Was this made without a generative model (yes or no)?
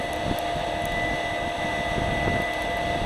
yes